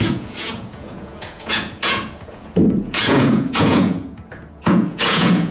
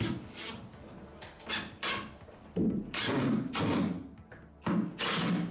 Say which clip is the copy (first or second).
first